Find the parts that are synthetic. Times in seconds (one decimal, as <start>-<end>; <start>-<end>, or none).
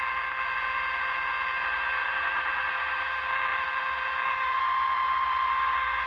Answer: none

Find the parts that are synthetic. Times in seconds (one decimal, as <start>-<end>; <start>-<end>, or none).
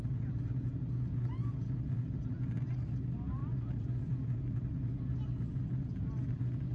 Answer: none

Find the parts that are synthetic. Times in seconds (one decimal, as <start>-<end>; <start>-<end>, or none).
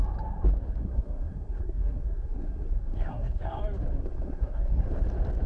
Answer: 0.8-3.6; 4.0-4.9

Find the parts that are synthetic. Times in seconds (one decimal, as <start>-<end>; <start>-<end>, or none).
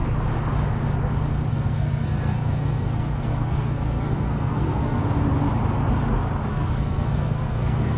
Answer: 1.5-5.0; 6.5-8.0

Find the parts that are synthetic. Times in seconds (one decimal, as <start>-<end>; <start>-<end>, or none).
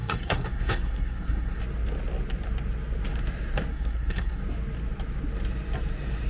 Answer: 0.0-1.6; 3.7-4.4